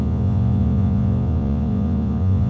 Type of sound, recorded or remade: remade